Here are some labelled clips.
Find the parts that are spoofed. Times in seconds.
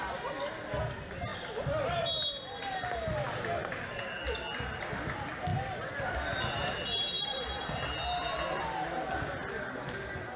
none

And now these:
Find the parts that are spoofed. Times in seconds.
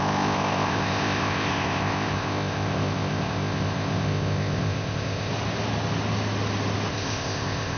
0.0-5.3 (codec, ZipCodec); 6.9-7.8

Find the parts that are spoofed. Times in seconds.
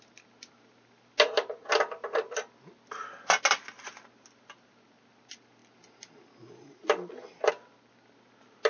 none